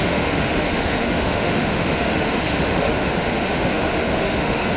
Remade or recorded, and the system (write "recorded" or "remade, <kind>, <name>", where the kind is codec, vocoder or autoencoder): remade, autoencoder, DAC-VAE